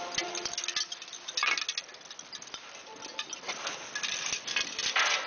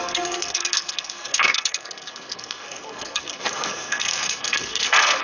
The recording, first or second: first